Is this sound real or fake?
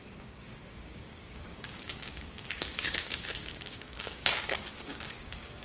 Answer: fake